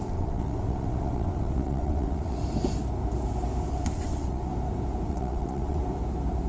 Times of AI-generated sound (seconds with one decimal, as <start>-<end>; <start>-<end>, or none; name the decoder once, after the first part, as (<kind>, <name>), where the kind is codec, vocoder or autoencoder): 0.0-2.4 (vocoder, WaveNeXt); 3.7-4.5; 5.1-5.8